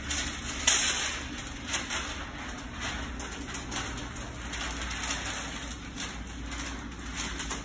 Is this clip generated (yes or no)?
no